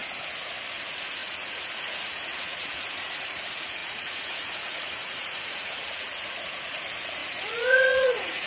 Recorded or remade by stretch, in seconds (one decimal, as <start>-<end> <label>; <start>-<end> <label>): 0.0-0.7 recorded; 0.7-8.5 remade